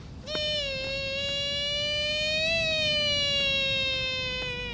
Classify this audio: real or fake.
real